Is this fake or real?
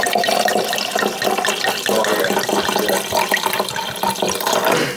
real